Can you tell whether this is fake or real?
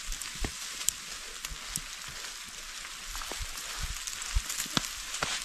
real